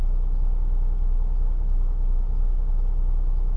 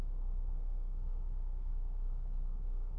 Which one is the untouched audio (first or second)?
first